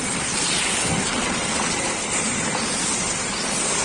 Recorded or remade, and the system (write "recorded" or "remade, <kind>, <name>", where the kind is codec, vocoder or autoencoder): recorded